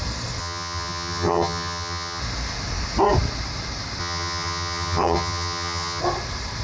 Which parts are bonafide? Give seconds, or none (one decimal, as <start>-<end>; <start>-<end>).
0.0-0.4; 2.2-4.0; 6.0-6.6